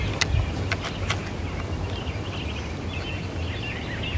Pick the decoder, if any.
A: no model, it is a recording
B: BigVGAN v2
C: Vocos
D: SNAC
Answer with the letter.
A